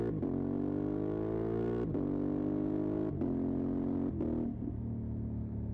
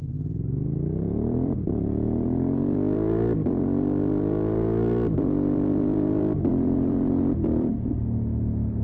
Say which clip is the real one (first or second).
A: first